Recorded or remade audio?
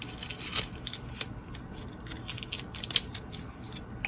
recorded